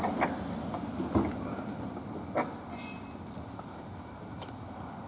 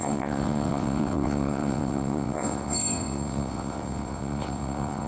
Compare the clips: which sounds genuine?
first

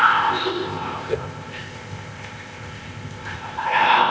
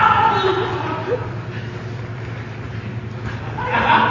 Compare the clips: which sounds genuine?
second